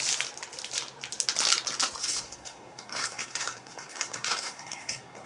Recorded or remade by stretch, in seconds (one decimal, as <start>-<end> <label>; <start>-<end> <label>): 0.0-2.0 recorded; 2.0-5.3 remade